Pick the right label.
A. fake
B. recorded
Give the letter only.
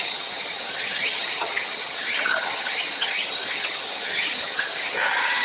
A